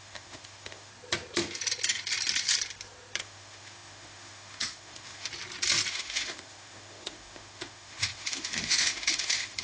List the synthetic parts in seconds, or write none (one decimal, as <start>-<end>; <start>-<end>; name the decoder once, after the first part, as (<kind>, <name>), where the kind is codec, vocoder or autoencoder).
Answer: 0.0-0.9 (autoencoder, DAC-VAE); 3.2-5.3; 5.9-9.6